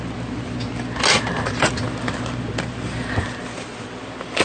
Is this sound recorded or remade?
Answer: recorded